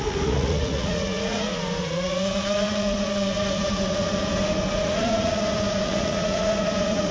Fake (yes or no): yes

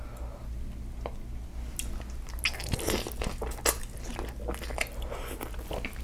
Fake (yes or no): no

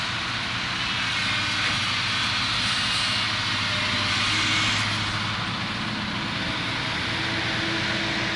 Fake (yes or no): no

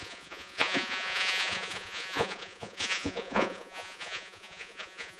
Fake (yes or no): yes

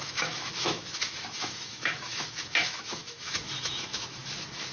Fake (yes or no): yes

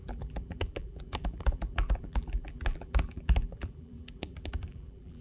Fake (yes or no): yes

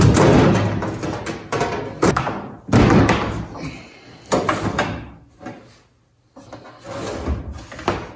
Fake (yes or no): no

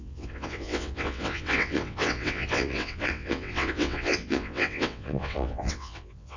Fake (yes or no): yes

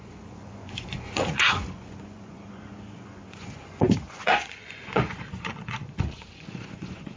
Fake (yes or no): yes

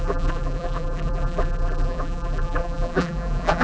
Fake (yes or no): yes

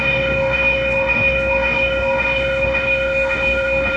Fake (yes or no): yes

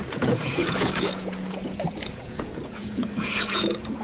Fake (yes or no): yes